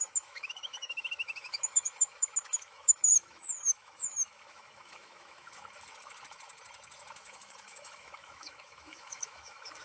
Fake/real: fake